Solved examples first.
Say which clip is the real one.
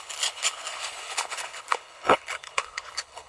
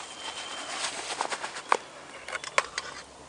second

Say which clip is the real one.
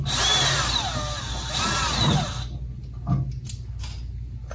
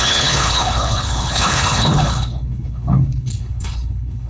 first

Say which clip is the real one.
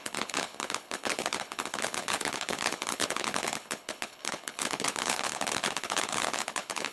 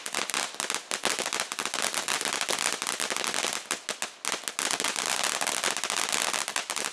second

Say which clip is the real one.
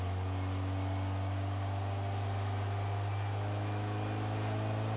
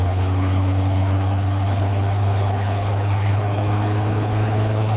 first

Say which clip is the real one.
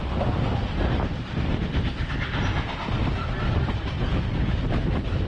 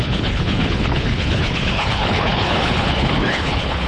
first